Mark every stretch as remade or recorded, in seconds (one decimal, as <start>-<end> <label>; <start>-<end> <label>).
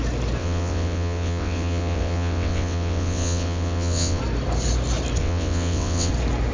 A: 0.0-0.4 recorded; 0.4-4.2 remade; 4.2-5.2 recorded; 5.2-6.1 remade; 6.1-6.5 recorded